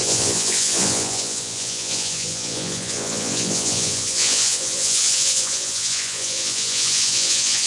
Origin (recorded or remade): remade